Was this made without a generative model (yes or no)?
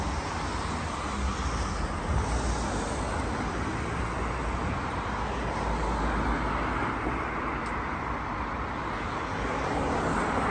yes